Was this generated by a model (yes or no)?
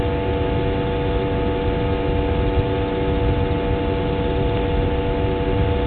no